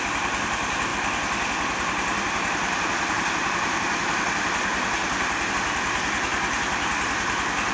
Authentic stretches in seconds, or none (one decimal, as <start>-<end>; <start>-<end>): 0.0-7.7